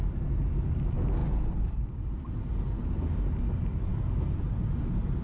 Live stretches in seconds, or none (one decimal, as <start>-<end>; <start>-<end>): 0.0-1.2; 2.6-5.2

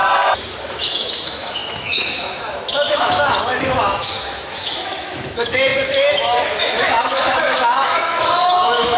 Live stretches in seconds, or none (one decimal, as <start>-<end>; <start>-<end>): 0.0-0.6

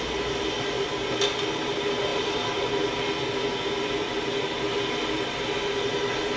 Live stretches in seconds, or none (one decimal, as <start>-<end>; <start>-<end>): 0.0-6.4

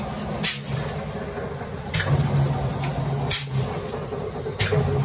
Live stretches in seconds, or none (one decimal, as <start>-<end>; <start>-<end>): 0.0-5.0

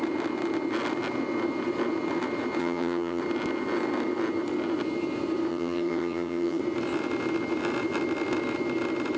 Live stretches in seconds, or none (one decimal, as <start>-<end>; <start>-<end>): 0.0-2.6; 3.2-5.5; 6.6-9.2